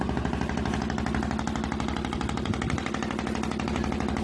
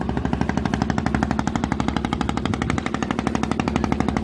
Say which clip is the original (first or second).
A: first